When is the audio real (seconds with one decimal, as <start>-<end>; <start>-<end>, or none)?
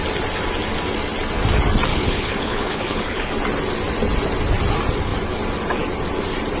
0.0-1.9; 3.3-6.6